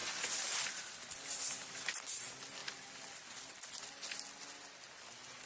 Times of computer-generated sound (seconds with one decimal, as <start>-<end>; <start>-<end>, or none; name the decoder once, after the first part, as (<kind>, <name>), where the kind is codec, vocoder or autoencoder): none